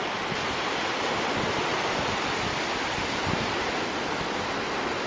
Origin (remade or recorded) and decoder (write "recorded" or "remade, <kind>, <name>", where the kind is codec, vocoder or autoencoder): recorded